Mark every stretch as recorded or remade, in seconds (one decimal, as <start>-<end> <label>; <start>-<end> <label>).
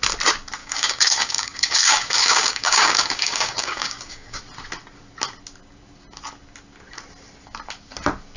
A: 0.0-0.6 recorded; 0.6-4.4 remade; 4.4-8.4 recorded